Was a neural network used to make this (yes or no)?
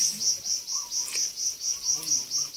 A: no